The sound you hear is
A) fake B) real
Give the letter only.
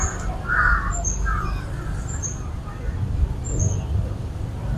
B